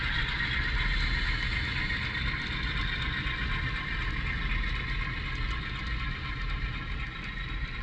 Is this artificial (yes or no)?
no